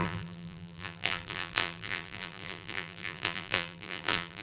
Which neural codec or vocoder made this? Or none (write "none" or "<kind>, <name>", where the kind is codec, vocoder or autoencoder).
vocoder, BigVGAN v2